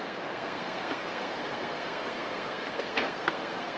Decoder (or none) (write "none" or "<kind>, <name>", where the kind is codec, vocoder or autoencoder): codec, SNAC